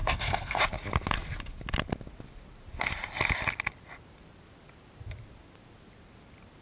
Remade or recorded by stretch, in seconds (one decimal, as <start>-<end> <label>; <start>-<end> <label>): 0.0-0.6 remade; 0.6-6.6 recorded